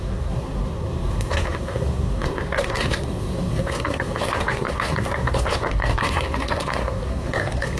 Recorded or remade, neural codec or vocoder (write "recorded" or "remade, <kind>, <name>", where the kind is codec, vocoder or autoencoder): remade, codec, SNAC